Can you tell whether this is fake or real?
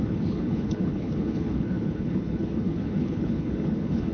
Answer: fake